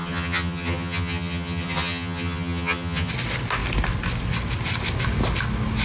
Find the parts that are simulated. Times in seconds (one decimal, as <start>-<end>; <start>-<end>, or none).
0.0-3.1